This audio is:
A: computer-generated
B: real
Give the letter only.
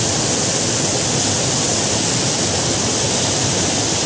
B